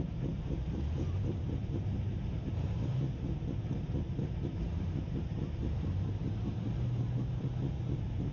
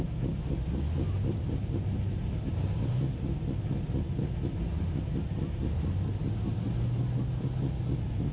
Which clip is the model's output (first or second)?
first